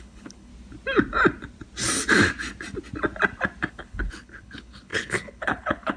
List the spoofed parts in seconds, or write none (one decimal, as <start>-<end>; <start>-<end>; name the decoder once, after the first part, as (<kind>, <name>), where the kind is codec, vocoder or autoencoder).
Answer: 0.0-0.5 (codec, HILCodec); 3.7-6.0